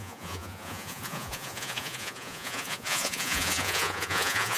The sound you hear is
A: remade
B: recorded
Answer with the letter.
A